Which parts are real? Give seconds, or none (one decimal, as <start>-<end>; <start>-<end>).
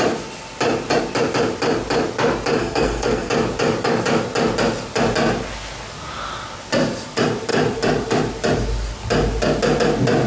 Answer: 0.0-2.6; 3.3-10.3